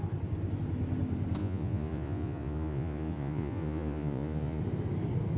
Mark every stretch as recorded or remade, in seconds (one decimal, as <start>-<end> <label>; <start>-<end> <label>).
0.0-1.4 recorded; 1.4-4.6 remade; 4.6-5.4 recorded